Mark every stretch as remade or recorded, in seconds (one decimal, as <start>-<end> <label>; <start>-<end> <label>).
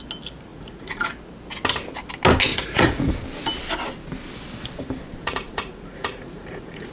0.0-0.5 recorded; 0.5-1.1 remade; 1.1-2.5 recorded; 2.5-3.1 remade; 3.1-5.2 recorded; 5.2-6.9 remade